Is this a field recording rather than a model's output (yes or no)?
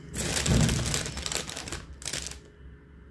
yes